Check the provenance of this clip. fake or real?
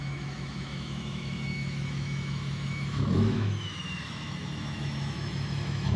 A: fake